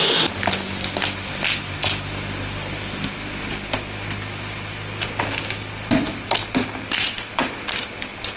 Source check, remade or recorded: recorded